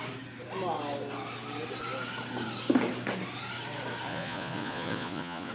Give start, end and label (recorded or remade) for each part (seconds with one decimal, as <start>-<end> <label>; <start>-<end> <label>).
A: 0.0-4.1 recorded; 4.1-5.5 remade